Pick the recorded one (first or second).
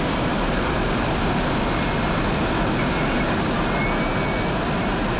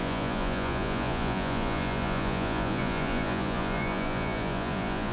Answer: first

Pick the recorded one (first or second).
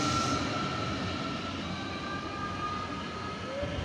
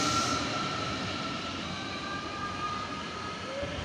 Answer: first